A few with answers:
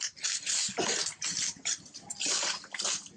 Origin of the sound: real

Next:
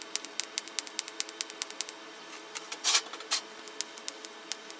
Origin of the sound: real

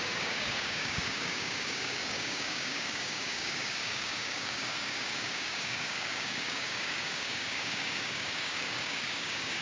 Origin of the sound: fake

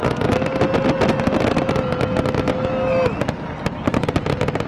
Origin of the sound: real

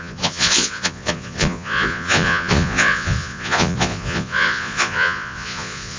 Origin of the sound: fake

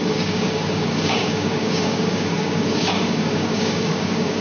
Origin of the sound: fake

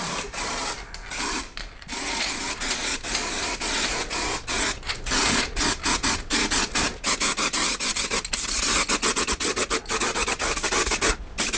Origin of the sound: real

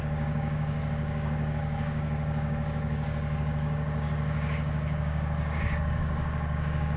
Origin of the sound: fake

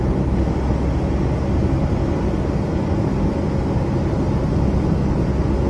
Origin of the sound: real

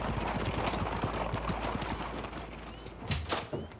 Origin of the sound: real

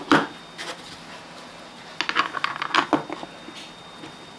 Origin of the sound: real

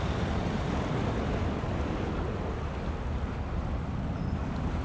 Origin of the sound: real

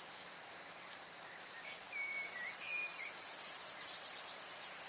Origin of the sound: fake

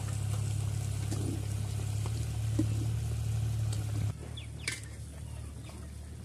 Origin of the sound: real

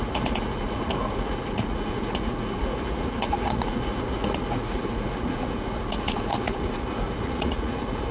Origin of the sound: fake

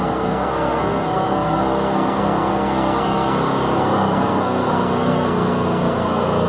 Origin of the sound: fake